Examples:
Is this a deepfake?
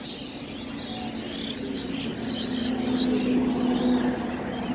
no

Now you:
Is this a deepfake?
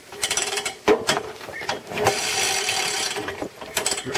yes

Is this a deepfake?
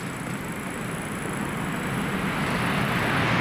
no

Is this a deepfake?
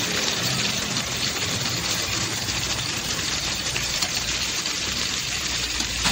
yes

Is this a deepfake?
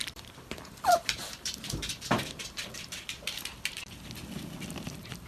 yes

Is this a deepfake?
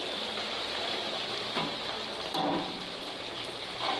yes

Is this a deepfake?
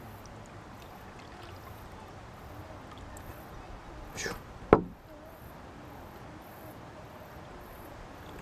no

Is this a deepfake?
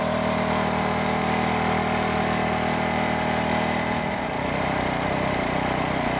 yes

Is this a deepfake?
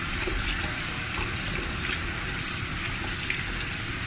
no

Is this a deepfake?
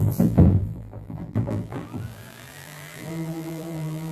yes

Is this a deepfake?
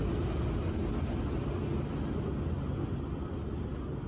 no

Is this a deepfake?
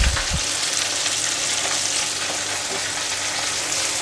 yes